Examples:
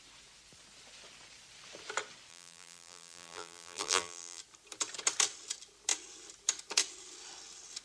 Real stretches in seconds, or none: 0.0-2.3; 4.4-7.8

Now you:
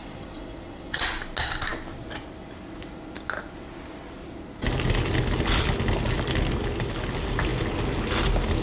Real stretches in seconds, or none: 1.0-8.6

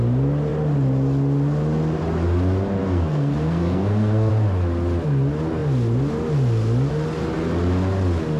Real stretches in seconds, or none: 0.0-2.8; 4.3-8.4